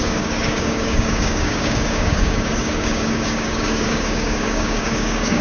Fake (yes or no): yes